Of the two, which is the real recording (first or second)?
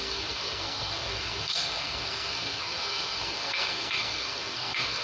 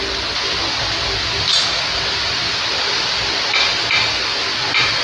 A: second